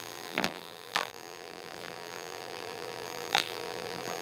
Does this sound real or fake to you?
fake